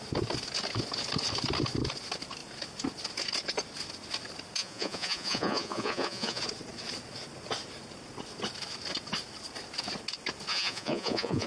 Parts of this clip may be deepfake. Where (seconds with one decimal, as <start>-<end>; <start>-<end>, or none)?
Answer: 4.6-6.4; 10.5-11.5